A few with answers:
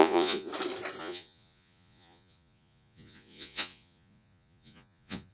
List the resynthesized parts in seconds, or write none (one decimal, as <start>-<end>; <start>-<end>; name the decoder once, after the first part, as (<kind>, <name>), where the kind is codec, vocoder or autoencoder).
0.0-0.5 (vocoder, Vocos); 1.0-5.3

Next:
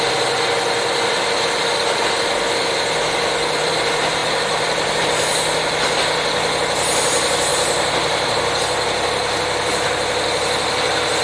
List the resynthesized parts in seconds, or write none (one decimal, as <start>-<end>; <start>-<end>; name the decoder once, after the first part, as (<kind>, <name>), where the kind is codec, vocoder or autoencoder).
4.2-5.1 (vocoder, BigVGAN v2); 7.5-8.4

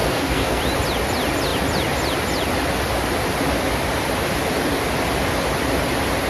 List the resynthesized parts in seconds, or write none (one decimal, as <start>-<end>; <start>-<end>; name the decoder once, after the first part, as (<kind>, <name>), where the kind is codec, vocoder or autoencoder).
0.0-0.6 (codec, SNAC)

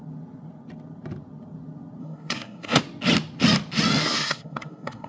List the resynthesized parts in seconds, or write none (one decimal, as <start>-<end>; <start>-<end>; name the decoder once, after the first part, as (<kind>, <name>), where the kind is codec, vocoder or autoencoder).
2.0-2.8 (codec, SNAC); 4.0-5.1

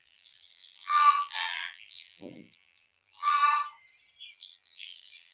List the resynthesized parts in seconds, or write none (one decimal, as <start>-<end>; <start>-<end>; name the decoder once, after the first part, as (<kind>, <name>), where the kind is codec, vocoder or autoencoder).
0.0-3.4 (vocoder, BigVGAN v2); 4.3-5.3

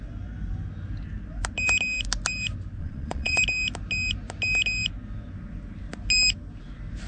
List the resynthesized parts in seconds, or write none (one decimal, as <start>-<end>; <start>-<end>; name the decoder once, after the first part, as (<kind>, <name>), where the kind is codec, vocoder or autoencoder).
2.8-3.4 (vocoder, Vocos)